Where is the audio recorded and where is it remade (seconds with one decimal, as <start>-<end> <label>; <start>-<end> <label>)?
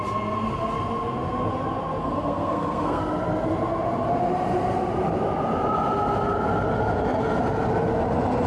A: 0.0-2.0 recorded; 2.0-3.0 remade; 3.0-8.5 recorded